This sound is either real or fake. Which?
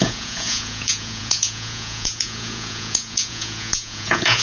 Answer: fake